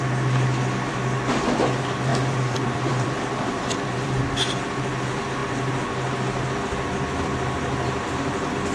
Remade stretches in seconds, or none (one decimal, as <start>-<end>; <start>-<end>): 2.1-4.1